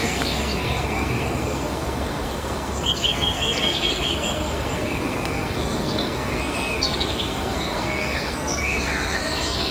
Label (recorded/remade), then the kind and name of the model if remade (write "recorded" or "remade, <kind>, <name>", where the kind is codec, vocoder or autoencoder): remade, codec, SNAC